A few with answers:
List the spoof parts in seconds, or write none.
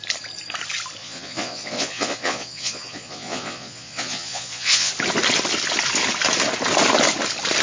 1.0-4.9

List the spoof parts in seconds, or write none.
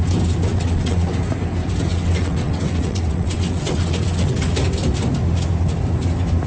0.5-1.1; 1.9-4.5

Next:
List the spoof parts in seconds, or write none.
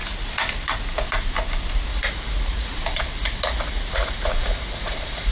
1.9-5.3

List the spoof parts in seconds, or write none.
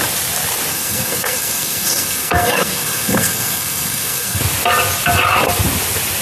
0.7-4.4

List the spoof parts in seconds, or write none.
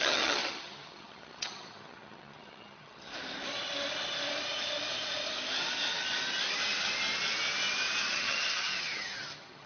0.0-3.1; 8.1-9.7